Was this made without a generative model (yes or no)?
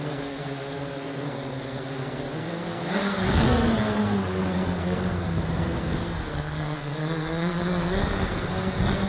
no